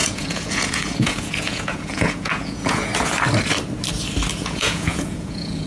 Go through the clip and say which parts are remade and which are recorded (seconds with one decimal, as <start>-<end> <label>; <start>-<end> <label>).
0.0-2.9 remade; 2.9-4.3 recorded; 4.3-5.7 remade